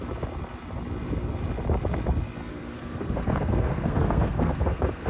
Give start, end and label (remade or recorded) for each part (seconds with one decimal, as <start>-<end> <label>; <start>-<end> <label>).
0.0-2.5 recorded; 2.5-5.1 remade